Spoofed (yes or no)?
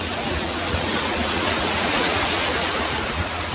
yes